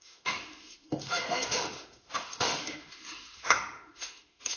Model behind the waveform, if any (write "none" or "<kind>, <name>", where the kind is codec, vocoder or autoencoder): autoencoder, DAC-VAE